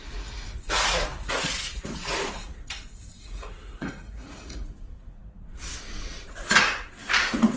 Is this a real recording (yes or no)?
no